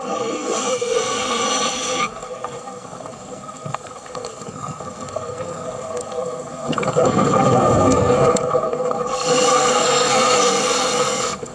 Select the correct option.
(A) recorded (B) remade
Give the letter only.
B